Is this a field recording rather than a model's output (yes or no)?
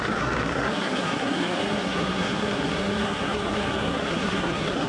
no